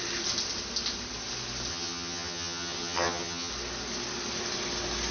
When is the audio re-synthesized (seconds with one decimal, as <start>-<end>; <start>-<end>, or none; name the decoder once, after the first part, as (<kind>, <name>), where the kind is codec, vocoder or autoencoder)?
1.7-3.5 (vocoder, HiFi-GAN)